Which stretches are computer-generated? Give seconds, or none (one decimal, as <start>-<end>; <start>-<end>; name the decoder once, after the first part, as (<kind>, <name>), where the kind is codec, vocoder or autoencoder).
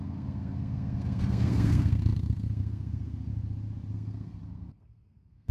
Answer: 0.0-3.3 (codec, SNAC); 3.9-5.5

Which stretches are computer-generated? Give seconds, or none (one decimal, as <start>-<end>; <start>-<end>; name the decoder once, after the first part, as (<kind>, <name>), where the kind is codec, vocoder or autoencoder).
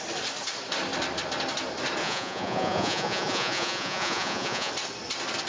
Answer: 2.0-4.7 (vocoder, Vocos)